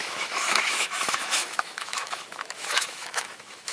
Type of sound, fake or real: fake